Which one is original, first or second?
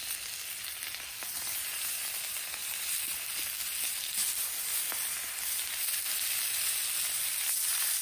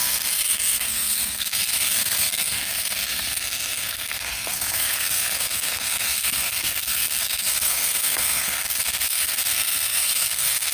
first